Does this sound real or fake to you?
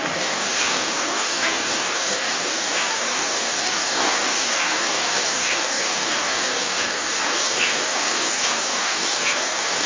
fake